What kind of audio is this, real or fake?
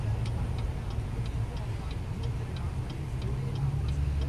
real